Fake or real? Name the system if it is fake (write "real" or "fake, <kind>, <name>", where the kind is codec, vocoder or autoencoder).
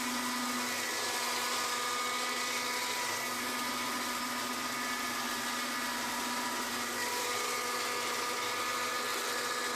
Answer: real